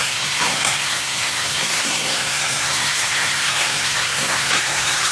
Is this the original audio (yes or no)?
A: no